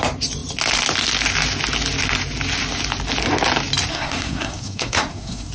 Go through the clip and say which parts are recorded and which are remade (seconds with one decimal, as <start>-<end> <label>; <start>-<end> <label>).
0.0-3.9 recorded; 3.9-5.5 remade

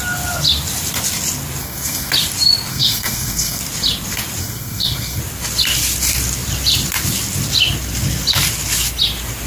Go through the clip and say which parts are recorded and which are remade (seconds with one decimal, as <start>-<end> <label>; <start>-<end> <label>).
0.0-1.6 recorded; 1.6-2.1 remade; 2.1-2.7 recorded; 2.7-3.6 remade; 3.6-4.4 recorded; 4.4-5.2 remade; 5.2-9.5 recorded